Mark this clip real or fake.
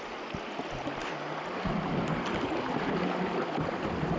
real